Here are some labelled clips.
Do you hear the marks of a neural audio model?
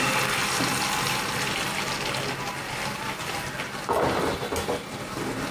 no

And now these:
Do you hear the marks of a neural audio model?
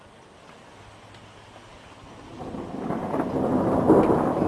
no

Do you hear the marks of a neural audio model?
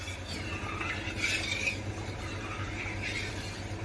no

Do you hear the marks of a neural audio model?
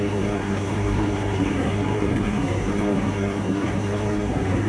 yes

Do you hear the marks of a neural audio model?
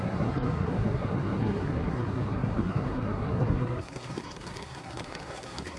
yes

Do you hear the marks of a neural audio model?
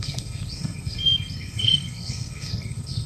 yes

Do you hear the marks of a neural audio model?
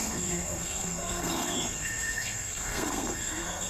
yes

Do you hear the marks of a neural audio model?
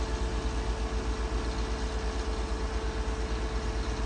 no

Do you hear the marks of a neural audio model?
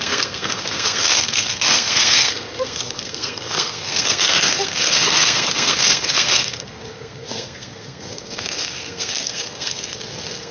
yes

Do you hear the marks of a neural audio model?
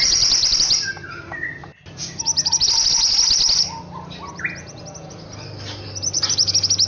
no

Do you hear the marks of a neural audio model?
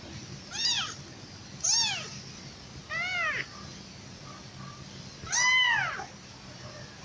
no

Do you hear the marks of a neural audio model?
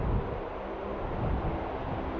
no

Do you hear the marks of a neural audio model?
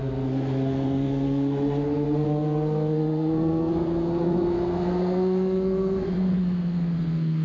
yes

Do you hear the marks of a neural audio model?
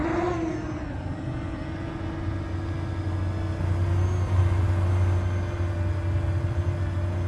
no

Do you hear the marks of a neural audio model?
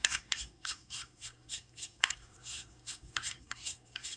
yes